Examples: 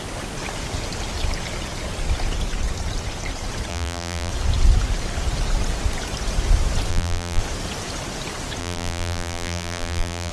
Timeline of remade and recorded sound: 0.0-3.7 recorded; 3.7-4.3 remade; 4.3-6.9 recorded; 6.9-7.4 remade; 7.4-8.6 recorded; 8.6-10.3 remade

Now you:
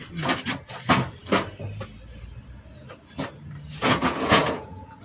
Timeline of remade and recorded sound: 0.0-3.8 recorded; 3.8-5.0 remade

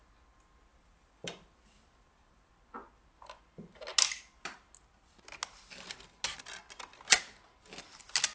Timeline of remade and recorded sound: 0.0-0.7 recorded; 0.7-2.5 remade; 2.5-8.3 recorded

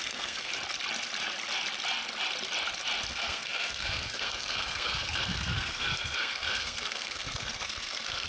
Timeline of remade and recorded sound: 0.0-0.5 remade; 0.5-3.1 recorded; 3.1-8.3 remade

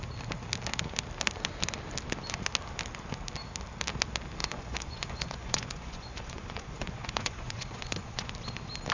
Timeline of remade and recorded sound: 0.0-4.4 recorded; 4.4-8.3 remade; 8.3-8.9 recorded

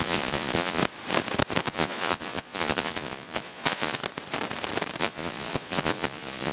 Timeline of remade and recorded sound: 0.0-0.8 remade; 0.8-1.6 recorded; 1.6-4.0 remade; 4.0-5.0 recorded; 5.0-6.5 remade